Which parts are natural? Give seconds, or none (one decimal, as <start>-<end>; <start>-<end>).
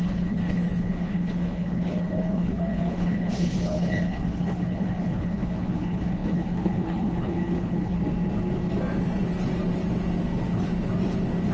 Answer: 8.0-11.5